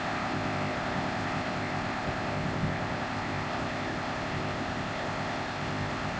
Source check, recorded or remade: remade